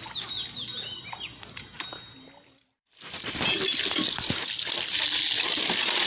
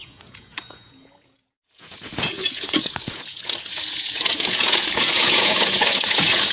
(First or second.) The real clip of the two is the first